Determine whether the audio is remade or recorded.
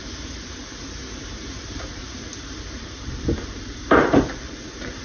remade